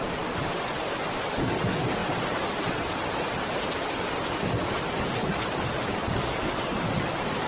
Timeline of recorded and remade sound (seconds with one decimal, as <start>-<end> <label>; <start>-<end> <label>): 0.0-2.0 recorded; 2.0-6.5 remade; 6.5-7.5 recorded